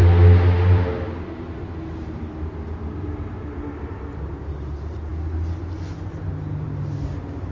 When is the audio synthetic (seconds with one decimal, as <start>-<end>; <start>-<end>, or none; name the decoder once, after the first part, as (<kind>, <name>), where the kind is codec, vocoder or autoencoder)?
6.3-6.8 (vocoder, BigVGAN v2)